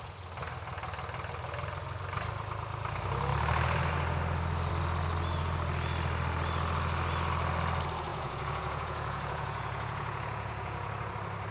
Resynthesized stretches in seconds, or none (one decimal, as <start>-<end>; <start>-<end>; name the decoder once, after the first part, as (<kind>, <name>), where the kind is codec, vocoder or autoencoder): 8.1-11.1 (vocoder, Vocos)